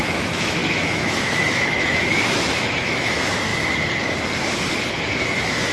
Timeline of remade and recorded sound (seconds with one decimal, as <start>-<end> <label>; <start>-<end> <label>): 0.0-3.5 remade; 3.5-4.9 recorded; 4.9-5.7 remade